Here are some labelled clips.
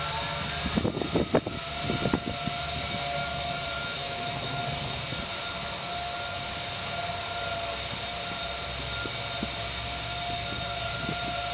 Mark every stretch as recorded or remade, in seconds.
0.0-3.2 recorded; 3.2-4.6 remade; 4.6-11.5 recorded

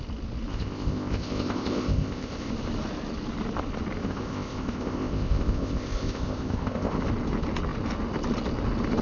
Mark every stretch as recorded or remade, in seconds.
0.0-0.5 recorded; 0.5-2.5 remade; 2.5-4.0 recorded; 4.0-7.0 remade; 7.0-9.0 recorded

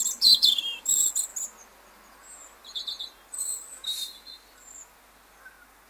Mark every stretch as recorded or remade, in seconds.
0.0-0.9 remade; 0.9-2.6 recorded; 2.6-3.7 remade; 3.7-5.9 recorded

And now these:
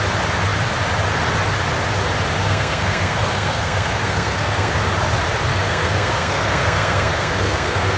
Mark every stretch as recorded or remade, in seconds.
0.0-2.4 recorded; 2.4-4.8 remade; 4.8-5.5 recorded; 5.5-8.0 remade

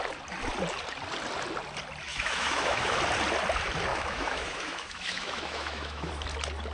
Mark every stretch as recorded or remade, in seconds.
0.0-2.1 recorded; 2.1-3.0 remade; 3.0-3.9 recorded; 3.9-6.1 remade; 6.1-6.7 recorded

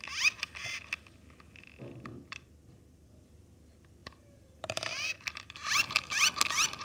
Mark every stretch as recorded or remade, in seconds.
0.0-2.1 recorded; 2.1-3.1 remade; 3.1-4.0 recorded; 4.0-6.3 remade; 6.3-6.8 recorded

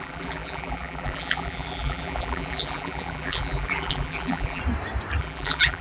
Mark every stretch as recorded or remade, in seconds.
0.0-4.6 remade; 4.6-5.2 recorded; 5.2-5.8 remade

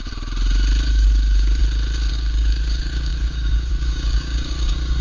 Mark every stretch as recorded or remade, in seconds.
0.0-0.9 recorded; 0.9-1.6 remade; 1.6-2.1 recorded; 2.1-5.0 remade